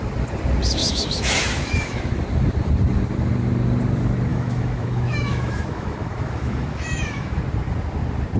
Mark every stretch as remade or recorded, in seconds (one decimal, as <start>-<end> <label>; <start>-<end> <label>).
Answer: 0.0-0.8 recorded; 0.8-2.1 remade; 2.1-4.3 recorded; 4.3-7.4 remade; 7.4-8.4 recorded